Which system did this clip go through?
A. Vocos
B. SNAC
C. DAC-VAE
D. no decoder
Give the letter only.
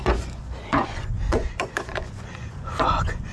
A